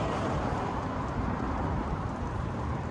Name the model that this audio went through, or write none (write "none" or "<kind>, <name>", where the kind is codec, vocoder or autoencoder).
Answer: vocoder, BigVGAN v2